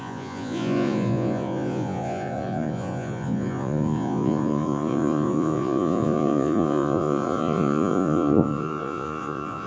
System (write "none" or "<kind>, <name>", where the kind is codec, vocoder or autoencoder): vocoder, Vocos